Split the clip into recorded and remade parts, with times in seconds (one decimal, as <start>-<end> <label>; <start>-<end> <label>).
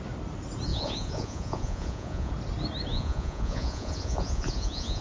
0.0-0.7 recorded; 0.7-2.3 remade; 2.3-2.9 recorded; 2.9-5.0 remade